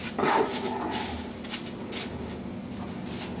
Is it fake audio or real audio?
real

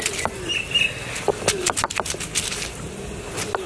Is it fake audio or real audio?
real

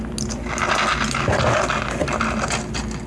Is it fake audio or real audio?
real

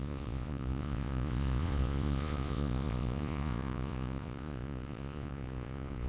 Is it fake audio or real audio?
fake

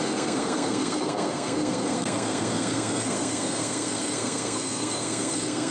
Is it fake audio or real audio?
fake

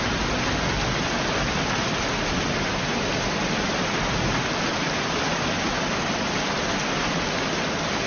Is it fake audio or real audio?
real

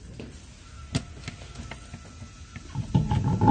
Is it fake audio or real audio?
real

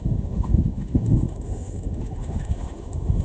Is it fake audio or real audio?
fake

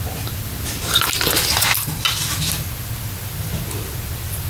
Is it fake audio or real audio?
real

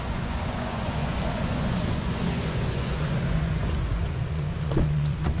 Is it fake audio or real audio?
fake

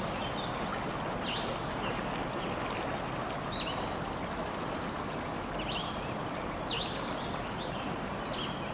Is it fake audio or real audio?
real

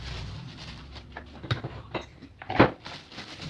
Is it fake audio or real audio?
fake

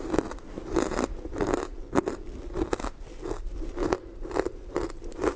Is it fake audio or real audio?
fake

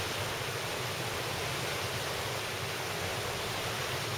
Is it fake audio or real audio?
real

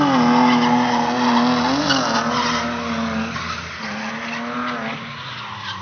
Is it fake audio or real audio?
real